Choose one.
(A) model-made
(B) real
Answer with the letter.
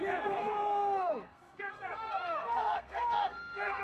A